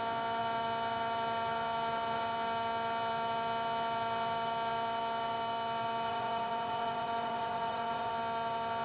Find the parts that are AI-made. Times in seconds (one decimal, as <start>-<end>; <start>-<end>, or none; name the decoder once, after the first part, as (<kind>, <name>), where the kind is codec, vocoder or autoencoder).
6.1-8.1 (vocoder, Vocos)

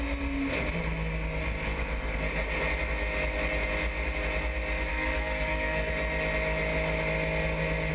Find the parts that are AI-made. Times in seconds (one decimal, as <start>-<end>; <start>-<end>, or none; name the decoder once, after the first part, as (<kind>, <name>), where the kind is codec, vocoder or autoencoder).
4.9-5.9 (codec, SNAC)

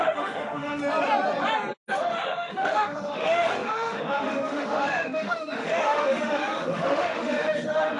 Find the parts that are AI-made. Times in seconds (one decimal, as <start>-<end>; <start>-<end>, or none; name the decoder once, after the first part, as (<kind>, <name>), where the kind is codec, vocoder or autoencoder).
0.0-0.8 (autoencoder, DAC-VAE); 1.9-8.0

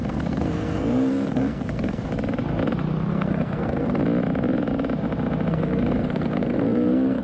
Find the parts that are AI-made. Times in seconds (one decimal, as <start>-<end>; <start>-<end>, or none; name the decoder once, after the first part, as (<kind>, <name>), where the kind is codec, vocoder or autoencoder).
0.0-2.1 (codec, SNAC); 3.1-4.0; 5.5-7.2

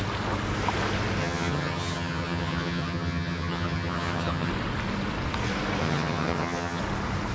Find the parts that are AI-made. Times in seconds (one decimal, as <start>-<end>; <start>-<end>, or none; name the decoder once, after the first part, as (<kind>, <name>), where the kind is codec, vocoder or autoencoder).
1.2-4.5 (vocoder, HiFi-GAN); 5.8-6.8

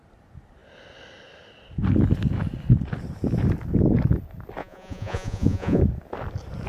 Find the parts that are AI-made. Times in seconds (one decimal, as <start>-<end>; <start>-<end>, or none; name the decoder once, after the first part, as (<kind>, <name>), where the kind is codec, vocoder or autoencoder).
4.6-5.8 (vocoder, Vocos)